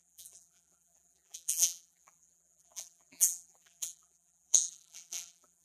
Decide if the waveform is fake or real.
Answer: fake